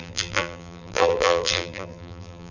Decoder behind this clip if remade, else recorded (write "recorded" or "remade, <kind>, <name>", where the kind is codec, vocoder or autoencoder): remade, vocoder, BigVGAN v2